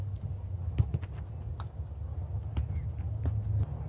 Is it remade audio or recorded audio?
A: recorded